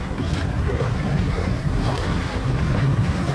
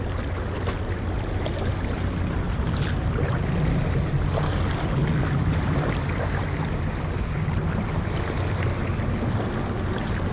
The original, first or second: second